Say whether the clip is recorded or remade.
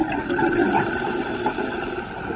recorded